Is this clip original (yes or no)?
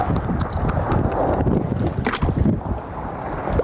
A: yes